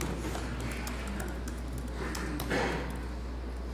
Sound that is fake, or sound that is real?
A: real